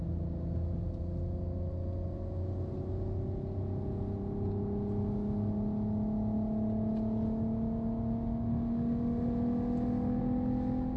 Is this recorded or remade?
recorded